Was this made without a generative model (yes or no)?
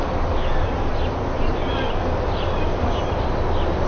yes